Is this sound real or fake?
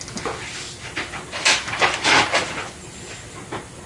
real